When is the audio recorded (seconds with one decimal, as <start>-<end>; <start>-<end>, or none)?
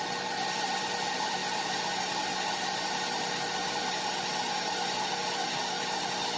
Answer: 0.0-6.4